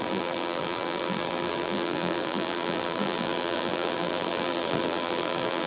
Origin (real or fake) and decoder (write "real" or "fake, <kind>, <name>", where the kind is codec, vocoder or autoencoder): fake, vocoder, BigVGAN v2